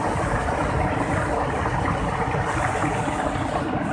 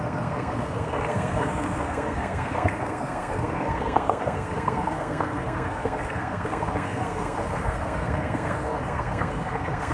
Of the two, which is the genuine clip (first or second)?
first